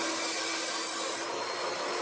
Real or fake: real